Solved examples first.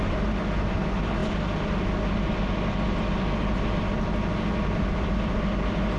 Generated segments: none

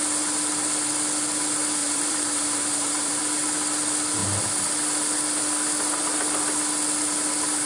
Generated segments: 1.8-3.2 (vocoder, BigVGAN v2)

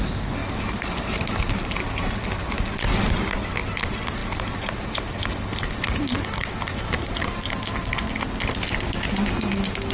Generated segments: 0.4-2.7 (vocoder, BigVGAN v2); 4.2-7.3